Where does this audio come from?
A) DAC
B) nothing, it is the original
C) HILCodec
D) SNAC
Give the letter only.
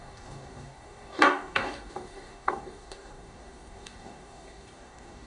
A